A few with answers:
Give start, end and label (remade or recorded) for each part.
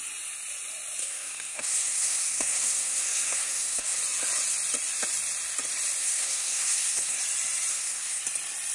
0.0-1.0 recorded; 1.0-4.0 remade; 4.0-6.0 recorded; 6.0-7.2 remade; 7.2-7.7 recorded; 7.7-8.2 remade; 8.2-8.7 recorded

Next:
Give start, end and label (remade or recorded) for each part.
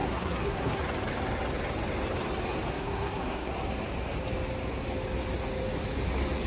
0.0-0.8 remade; 0.8-2.7 recorded; 2.7-3.5 remade; 3.5-6.5 recorded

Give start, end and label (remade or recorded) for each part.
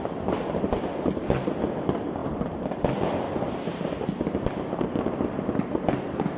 0.0-6.4 recorded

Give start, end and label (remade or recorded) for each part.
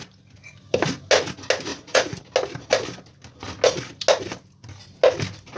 0.0-1.7 recorded; 1.7-2.2 remade; 2.2-5.6 recorded